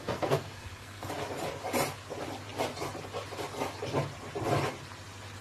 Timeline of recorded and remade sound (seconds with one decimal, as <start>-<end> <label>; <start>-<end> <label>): 0.0-1.1 remade; 1.1-5.4 recorded